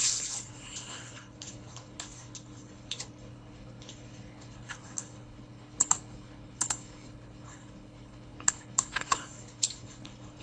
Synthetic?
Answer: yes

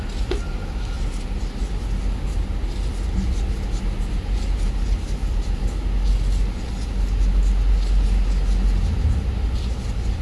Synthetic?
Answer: no